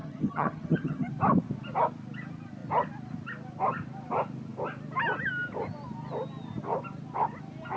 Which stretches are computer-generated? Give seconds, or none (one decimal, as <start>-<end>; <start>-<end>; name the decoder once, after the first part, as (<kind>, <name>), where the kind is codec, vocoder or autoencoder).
0.0-1.1 (vocoder, HiFi-GAN)